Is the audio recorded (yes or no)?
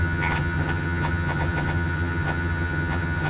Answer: no